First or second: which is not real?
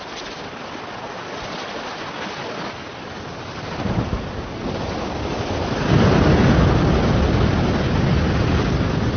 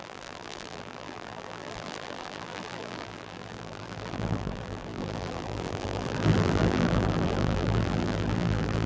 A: second